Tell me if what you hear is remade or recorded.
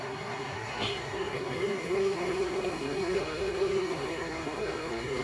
remade